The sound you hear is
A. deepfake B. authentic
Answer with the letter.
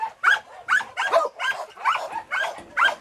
B